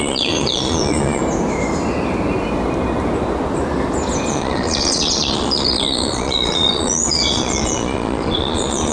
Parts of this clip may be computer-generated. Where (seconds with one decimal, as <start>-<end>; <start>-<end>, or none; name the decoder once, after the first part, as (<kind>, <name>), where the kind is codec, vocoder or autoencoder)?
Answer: 0.0-1.2 (vocoder, Vocos); 4.3-8.9